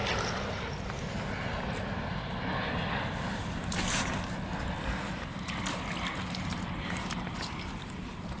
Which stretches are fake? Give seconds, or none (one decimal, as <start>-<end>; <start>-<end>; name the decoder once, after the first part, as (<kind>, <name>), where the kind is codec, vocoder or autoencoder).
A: none